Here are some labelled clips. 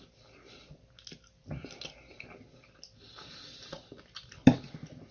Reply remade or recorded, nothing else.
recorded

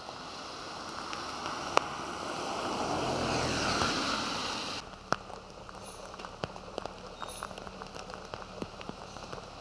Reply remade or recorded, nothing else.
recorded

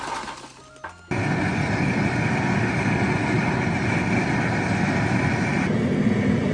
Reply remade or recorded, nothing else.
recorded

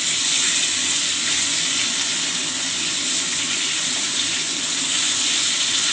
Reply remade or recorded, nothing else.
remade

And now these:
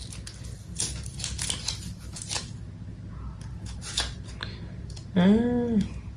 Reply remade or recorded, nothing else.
recorded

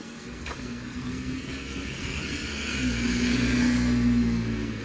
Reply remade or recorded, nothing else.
remade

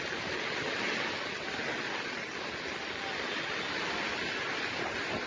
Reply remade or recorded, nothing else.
recorded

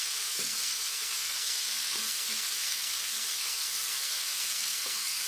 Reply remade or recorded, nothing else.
remade